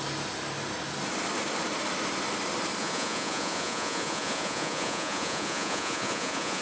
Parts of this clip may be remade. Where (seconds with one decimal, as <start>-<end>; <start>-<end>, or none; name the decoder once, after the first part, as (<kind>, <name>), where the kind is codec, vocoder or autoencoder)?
2.8-6.6 (vocoder, Vocos)